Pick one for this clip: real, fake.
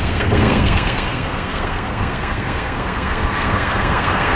fake